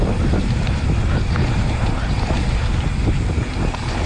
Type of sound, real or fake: real